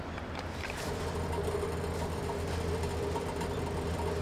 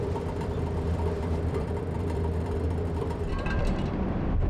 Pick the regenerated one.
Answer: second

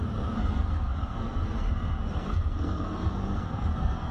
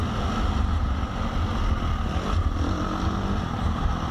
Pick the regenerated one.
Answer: first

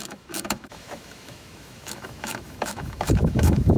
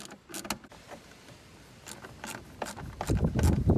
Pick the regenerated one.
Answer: first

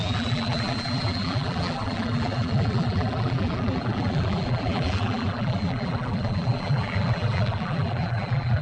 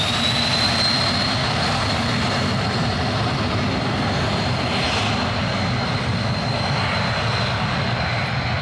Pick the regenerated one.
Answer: first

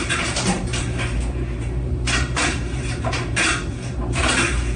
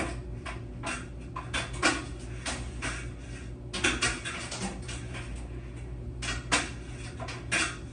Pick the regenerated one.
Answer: first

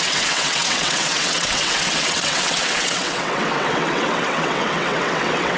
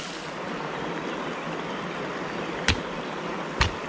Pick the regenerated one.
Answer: first